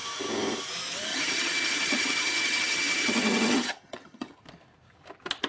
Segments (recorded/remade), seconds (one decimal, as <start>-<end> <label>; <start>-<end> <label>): 0.0-1.1 recorded; 1.1-4.4 remade; 4.4-5.5 recorded